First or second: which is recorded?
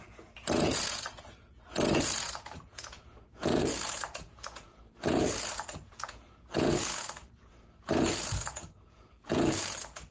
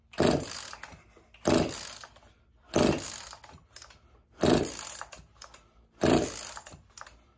second